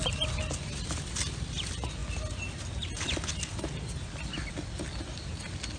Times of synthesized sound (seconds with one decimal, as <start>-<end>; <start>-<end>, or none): none